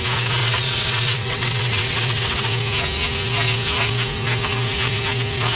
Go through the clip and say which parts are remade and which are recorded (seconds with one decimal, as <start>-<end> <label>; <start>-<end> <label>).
0.0-0.4 recorded; 0.4-2.5 remade; 2.5-5.6 recorded